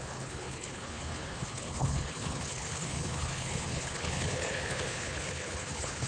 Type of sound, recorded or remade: remade